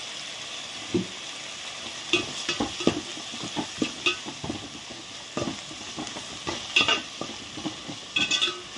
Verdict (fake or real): real